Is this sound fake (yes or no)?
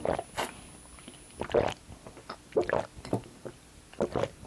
no